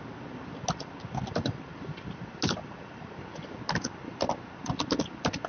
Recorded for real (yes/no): yes